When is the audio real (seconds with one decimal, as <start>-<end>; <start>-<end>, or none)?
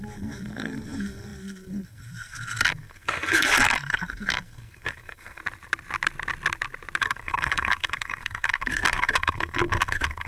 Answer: 5.4-7.0